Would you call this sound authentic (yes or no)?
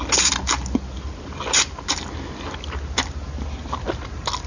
yes